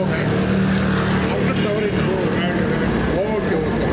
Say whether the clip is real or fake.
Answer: real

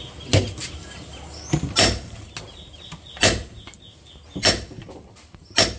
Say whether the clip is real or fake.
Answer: real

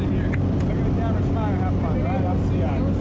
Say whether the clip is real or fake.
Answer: real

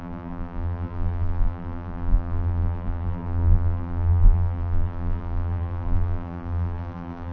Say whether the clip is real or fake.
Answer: fake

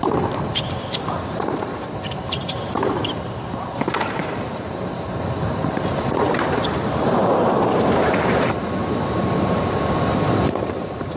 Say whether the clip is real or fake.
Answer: fake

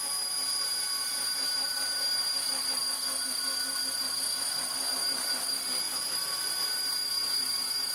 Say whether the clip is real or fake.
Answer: real